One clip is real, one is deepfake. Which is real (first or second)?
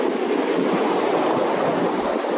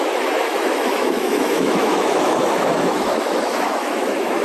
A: first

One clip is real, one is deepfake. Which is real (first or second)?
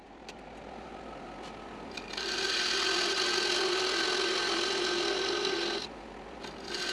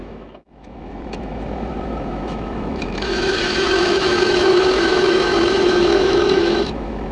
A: first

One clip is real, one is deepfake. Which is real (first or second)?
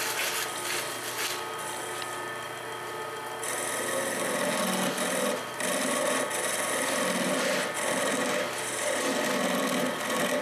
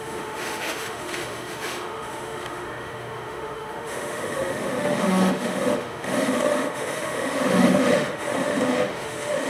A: first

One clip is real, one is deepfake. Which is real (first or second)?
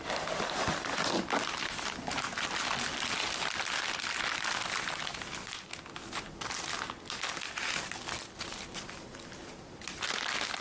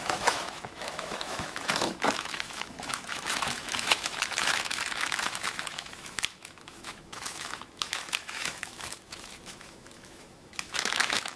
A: first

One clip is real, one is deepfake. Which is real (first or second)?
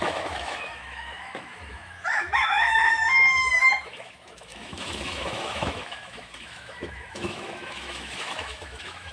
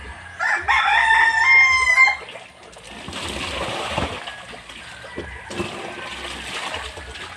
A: second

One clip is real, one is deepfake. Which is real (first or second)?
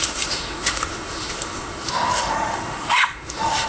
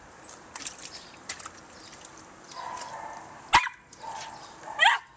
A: second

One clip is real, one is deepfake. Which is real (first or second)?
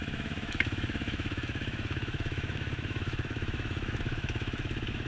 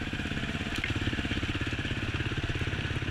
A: second